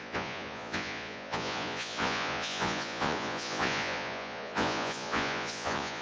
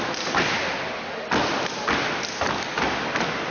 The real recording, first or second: second